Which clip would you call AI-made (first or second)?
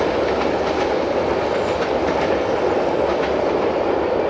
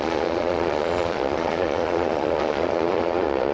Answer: second